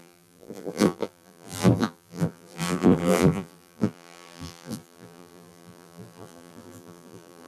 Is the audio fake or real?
fake